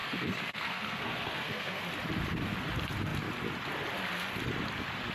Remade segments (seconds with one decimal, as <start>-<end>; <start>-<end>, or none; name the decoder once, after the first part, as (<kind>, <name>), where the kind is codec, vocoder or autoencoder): 0.0-1.8 (codec, SNAC)